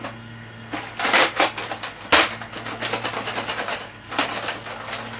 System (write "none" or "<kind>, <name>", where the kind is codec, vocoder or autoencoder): none